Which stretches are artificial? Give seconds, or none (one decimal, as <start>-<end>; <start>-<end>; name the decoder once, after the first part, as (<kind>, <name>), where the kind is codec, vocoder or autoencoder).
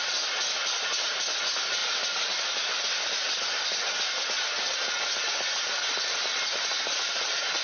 none